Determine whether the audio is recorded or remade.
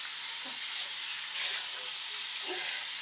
remade